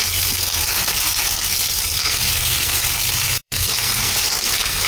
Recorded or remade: remade